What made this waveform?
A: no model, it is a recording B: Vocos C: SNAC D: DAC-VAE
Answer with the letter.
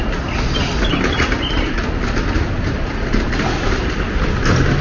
A